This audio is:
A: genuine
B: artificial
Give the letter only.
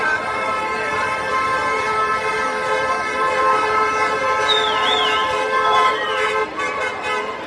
B